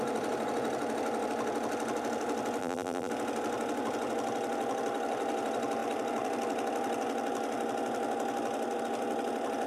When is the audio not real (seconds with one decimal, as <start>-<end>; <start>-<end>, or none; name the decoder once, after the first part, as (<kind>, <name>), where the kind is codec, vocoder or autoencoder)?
2.6-3.1 (vocoder, BigVGAN v2)

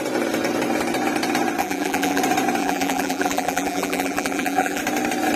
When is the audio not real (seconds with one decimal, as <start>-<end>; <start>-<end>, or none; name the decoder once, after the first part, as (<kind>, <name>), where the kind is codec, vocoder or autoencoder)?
1.6-2.2 (vocoder, BigVGAN v2); 2.6-4.8

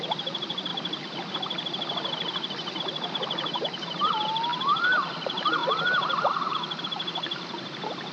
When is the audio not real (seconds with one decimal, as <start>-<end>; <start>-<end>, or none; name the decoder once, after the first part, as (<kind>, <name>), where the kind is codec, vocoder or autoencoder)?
0.0-0.7 (vocoder, BigVGAN v2); 3.1-8.1

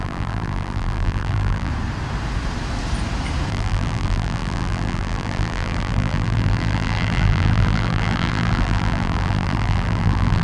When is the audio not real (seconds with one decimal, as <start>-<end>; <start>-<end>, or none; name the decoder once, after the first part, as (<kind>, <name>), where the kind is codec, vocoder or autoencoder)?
0.0-1.7 (vocoder, BigVGAN v2); 3.5-10.4

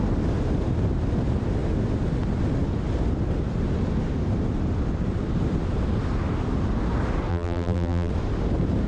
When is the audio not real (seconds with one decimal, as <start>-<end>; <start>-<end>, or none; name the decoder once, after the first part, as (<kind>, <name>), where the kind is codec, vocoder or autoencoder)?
7.3-8.1 (vocoder, BigVGAN v2)

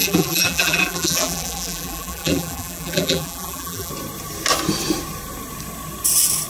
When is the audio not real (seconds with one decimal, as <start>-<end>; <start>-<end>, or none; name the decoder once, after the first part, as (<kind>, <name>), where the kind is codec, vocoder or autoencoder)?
0.0-3.9 (vocoder, BigVGAN v2)